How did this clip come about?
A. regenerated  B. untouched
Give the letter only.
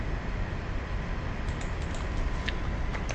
B